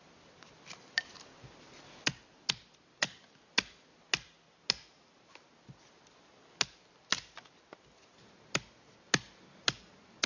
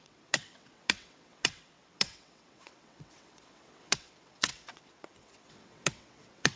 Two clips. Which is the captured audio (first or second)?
first